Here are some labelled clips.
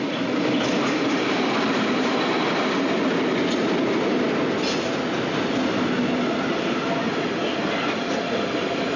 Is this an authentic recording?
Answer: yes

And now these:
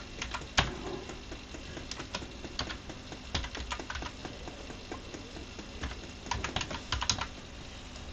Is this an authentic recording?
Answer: yes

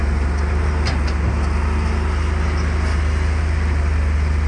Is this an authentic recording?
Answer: yes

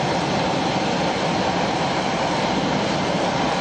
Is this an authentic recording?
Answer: yes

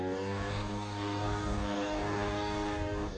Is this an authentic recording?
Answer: no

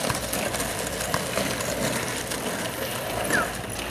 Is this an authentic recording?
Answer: yes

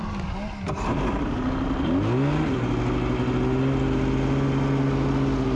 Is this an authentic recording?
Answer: yes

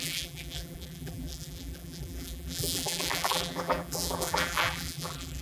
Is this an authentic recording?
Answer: no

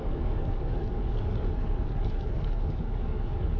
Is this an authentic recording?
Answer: no